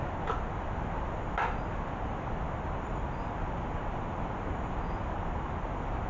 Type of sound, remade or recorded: recorded